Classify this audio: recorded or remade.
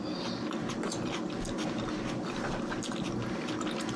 recorded